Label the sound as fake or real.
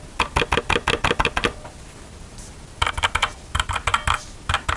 real